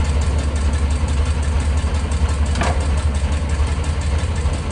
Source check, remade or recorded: recorded